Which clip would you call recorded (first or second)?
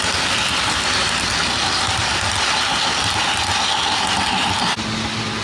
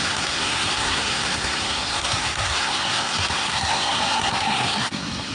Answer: first